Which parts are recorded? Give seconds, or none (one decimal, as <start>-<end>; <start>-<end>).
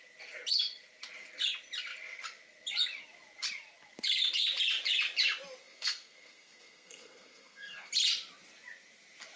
0.0-5.6; 7.9-9.4